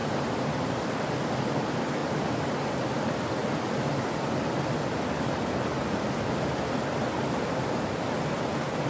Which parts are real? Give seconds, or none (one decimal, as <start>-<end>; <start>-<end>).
0.7-2.0; 3.0-8.9